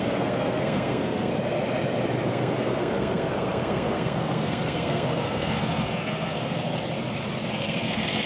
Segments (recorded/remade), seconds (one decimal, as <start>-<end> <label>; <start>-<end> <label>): 0.0-1.3 remade; 1.3-2.3 recorded; 2.3-6.7 remade; 6.7-7.5 recorded; 7.5-8.3 remade